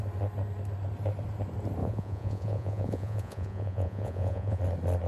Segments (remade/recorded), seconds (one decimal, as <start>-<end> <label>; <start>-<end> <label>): 0.0-1.8 recorded; 1.8-4.6 remade; 4.6-5.1 recorded